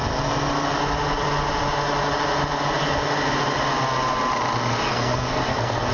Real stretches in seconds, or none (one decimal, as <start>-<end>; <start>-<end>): 0.0-4.9